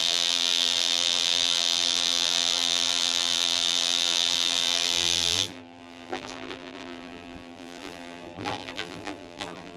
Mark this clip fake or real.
fake